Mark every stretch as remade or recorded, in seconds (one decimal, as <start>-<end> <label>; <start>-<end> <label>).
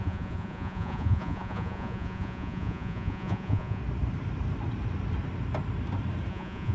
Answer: 0.0-3.8 remade; 3.8-6.3 recorded; 6.3-6.7 remade